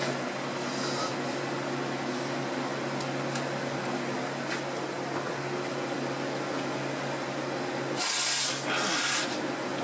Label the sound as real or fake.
real